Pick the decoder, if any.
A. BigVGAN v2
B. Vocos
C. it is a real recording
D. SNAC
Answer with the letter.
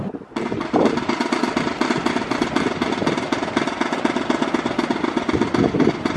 C